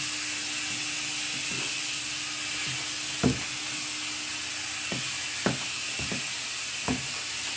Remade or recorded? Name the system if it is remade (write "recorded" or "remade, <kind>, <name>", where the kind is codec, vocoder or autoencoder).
recorded